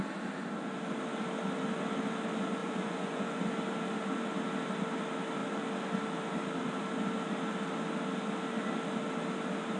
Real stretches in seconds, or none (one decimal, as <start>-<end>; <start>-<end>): 0.0-2.6; 3.5-9.8